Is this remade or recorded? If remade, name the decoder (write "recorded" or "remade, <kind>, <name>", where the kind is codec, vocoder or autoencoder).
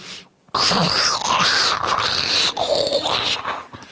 recorded